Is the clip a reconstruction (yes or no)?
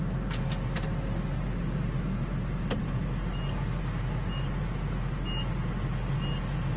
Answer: no